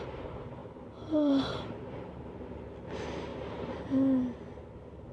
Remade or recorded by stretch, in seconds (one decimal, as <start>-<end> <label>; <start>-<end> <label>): 0.0-0.6 recorded; 0.6-2.3 remade; 2.3-5.1 recorded